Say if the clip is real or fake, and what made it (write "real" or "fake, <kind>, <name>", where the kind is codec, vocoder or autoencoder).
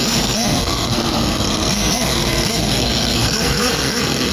fake, codec, SNAC